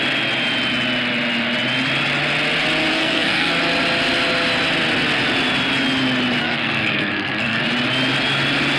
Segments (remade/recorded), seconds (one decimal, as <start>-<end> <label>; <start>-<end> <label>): 0.0-2.9 recorded; 2.9-3.5 remade; 3.5-6.4 recorded; 6.4-7.6 remade; 7.6-8.8 recorded